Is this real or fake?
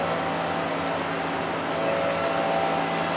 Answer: real